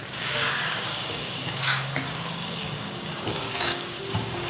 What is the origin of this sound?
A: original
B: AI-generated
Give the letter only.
B